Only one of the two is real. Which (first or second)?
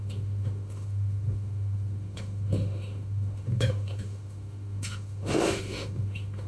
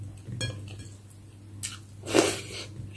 second